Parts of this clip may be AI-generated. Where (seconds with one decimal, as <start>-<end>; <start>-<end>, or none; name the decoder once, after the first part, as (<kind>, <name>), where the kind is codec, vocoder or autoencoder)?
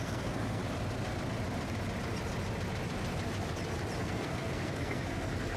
0.0-0.6 (codec, SNAC); 4.0-5.6